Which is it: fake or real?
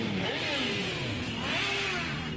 real